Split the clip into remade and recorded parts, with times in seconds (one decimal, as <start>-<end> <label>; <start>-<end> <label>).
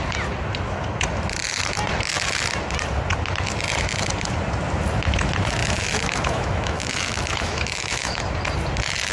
0.0-5.6 recorded; 5.6-8.2 remade; 8.2-9.1 recorded